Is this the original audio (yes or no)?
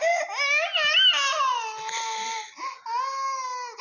yes